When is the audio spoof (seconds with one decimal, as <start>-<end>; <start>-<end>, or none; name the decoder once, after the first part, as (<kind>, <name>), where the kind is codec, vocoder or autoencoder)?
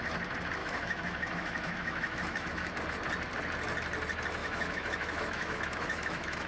0.6-2.8 (autoencoder, DAC-VAE); 4.4-6.5